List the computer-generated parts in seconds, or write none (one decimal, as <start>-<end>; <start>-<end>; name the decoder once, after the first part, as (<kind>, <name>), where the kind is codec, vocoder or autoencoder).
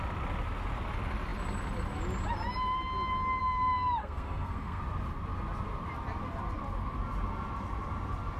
4.0-4.8 (codec, SNAC)